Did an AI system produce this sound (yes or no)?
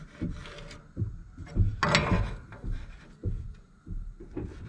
no